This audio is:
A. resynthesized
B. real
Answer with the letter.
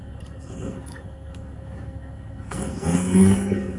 A